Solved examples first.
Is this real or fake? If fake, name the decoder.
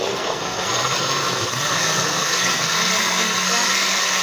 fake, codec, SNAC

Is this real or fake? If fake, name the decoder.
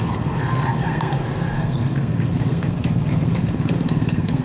fake, codec, SNAC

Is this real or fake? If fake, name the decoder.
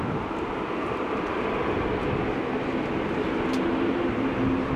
real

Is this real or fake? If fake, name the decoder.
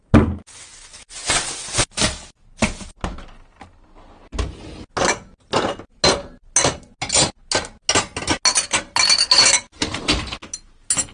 real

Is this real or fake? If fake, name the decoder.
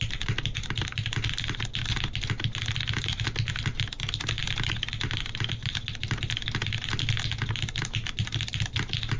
real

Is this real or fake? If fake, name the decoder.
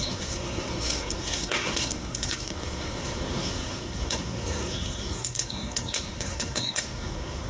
fake, codec, SNAC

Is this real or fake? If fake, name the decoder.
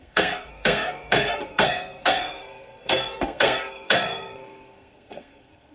fake, codec, SNAC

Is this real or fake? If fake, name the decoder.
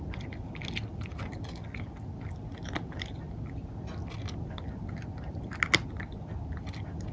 real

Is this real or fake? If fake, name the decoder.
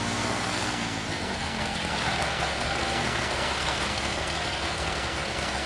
fake, codec, SNAC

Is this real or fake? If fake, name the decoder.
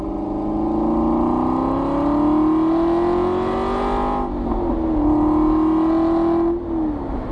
real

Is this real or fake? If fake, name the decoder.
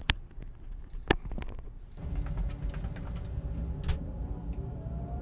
real